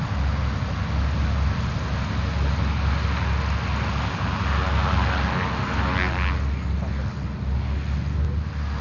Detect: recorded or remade recorded